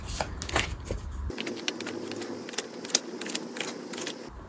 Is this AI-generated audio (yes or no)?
no